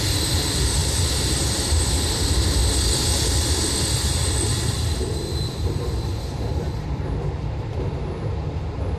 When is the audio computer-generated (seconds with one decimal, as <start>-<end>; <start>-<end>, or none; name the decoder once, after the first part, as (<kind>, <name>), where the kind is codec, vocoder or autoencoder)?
0.0-9.0 (vocoder, BigVGAN v2)